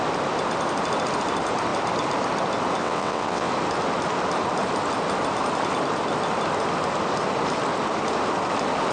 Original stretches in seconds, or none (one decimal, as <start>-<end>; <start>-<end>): 0.0-2.8; 3.5-8.9